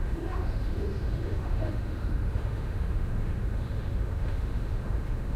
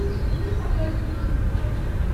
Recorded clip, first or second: second